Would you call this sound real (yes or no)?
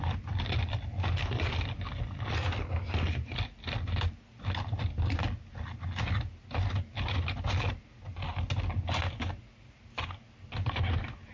yes